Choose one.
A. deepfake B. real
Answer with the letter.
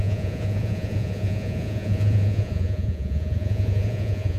A